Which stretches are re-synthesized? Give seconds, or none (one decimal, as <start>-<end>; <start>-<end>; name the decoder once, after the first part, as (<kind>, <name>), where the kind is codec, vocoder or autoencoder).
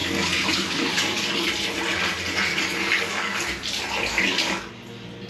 0.0-1.5 (codec, DAC); 2.5-3.4; 4.1-4.7